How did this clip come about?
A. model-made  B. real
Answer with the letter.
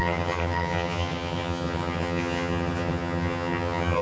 A